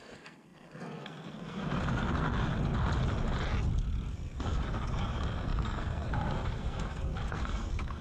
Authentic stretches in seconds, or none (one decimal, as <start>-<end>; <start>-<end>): 2.4-4.1